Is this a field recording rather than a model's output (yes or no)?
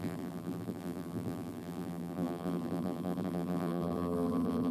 no